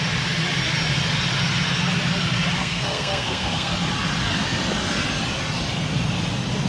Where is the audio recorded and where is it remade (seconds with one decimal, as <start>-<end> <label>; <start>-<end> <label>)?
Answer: 0.0-2.6 recorded; 2.6-3.7 remade; 3.7-6.7 recorded